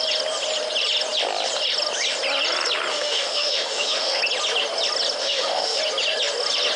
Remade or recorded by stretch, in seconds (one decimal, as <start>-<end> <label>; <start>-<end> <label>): 0.0-2.9 recorded; 2.9-4.2 remade; 4.2-5.2 recorded; 5.2-5.8 remade; 5.8-6.8 recorded